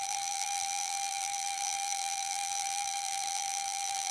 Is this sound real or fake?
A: fake